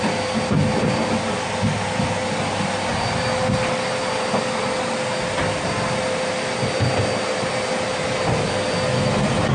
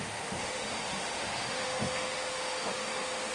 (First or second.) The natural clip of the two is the first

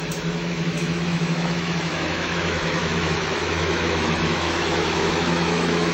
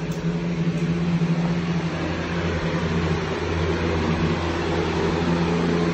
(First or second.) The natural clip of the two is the second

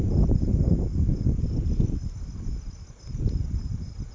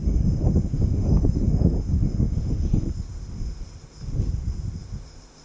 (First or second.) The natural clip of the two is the first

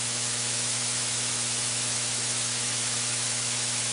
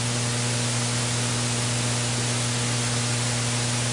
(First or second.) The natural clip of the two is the second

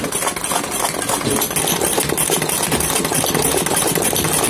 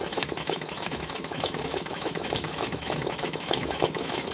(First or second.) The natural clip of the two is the first